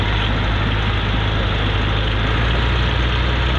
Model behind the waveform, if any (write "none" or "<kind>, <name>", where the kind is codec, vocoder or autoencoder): none